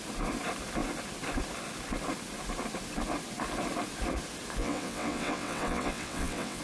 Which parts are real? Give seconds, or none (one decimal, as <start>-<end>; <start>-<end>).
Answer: 0.0-4.6